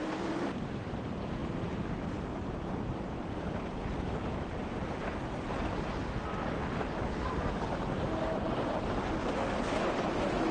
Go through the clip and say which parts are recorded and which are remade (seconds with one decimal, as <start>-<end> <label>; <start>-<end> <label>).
0.0-10.5 recorded